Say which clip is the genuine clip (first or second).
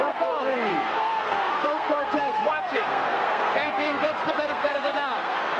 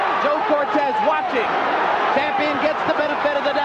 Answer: second